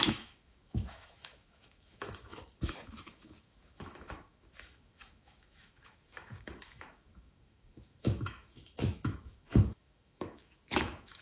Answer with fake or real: fake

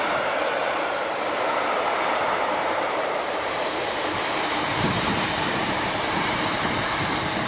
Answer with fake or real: fake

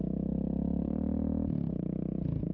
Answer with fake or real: real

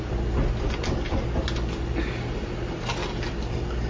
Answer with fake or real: real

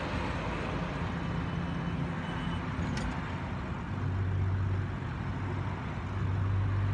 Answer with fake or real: real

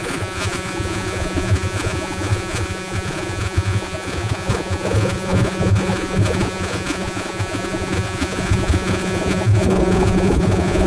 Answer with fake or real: fake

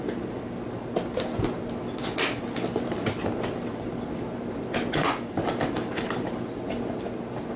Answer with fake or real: real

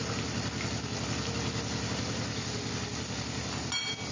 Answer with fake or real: real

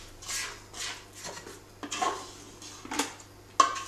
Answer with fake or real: real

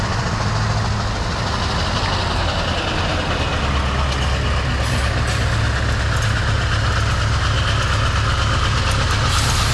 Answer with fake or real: real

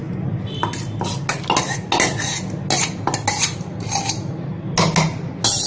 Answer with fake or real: real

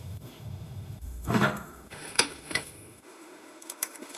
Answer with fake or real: fake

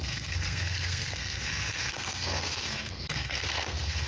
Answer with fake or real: fake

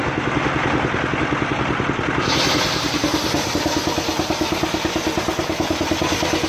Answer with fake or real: real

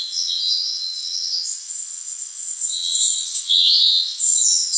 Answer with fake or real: fake